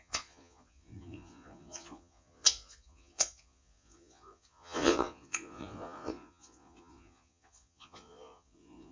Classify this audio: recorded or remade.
remade